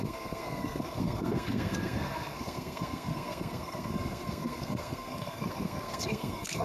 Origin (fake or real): fake